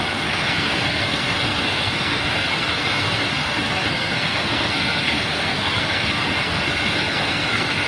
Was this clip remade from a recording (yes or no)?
yes